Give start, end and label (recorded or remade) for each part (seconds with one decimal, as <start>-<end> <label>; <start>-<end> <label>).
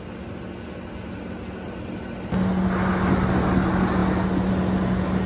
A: 0.0-5.3 recorded